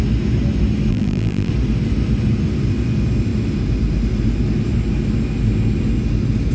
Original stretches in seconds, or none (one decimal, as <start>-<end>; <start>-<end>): 0.0-0.9; 1.5-6.5